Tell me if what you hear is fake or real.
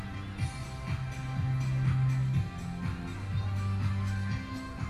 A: real